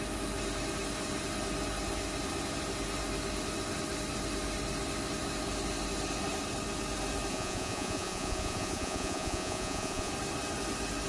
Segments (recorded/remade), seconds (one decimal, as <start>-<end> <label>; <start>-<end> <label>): 0.0-7.3 recorded; 7.3-10.1 remade; 10.1-11.1 recorded